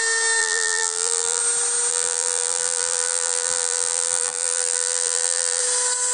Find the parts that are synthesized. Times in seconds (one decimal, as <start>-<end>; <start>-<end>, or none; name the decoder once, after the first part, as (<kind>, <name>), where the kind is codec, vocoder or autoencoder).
0.4-1.4 (vocoder, BigVGAN v2); 1.9-5.6